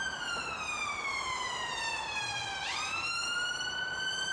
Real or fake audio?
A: fake